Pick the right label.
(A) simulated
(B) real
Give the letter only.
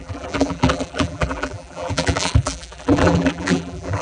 A